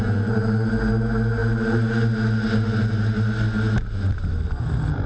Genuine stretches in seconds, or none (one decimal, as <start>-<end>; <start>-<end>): 0.0-5.1